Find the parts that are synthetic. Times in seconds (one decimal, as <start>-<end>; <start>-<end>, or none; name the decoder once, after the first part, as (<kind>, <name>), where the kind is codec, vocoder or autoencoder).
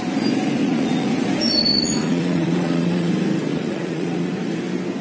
0.6-1.1 (vocoder, Vocos); 1.7-3.1; 3.5-4.3